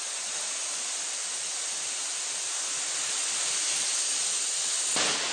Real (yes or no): yes